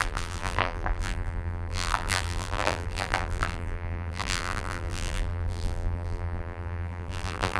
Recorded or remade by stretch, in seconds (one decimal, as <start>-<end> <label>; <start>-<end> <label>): 0.0-7.6 remade

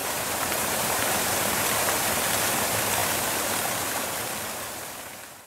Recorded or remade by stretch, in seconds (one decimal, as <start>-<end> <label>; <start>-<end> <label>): 0.0-1.6 remade; 1.6-5.5 recorded